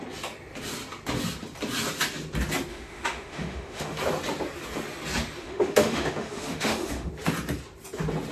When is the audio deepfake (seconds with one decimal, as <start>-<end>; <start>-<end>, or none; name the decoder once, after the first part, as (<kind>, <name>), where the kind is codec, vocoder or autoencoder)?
2.7-4.0 (autoencoder, DAC-VAE); 5.4-7.1